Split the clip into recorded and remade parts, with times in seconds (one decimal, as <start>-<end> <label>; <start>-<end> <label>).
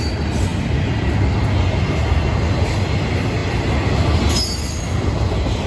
0.0-5.7 recorded